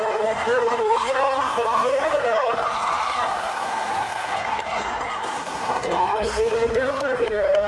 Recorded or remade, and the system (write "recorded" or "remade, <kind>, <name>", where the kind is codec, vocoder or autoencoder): remade, codec, SNAC